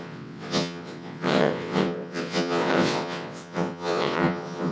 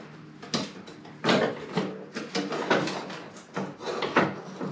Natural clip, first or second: second